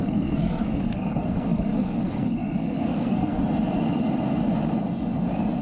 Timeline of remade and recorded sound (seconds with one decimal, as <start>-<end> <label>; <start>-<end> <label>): 0.0-3.4 remade; 3.4-5.6 recorded